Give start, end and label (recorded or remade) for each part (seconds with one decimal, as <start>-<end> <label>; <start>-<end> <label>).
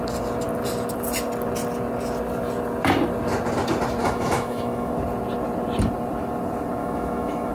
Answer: 0.0-4.0 recorded; 4.0-4.9 remade; 4.9-6.8 recorded; 6.8-7.5 remade